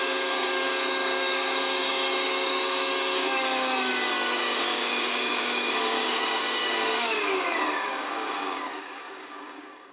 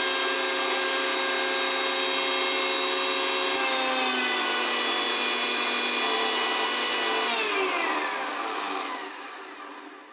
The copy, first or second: first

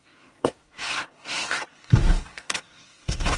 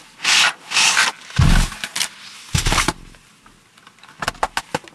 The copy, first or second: first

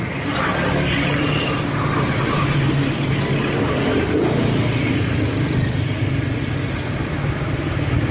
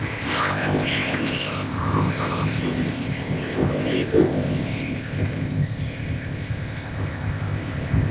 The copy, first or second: second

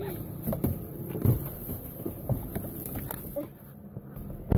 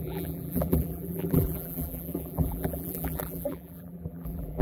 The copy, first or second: second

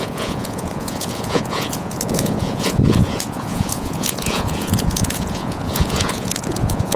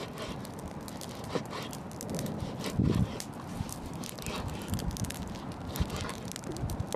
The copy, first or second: first